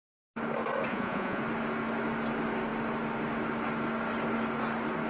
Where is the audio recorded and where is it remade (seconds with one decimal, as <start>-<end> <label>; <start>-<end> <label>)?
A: 0.0-0.9 recorded; 0.9-1.4 remade; 1.4-5.1 recorded